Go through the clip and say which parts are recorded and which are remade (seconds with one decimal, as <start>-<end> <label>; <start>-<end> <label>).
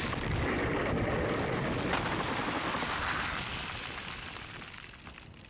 0.0-5.5 recorded